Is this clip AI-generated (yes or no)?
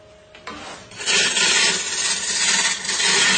no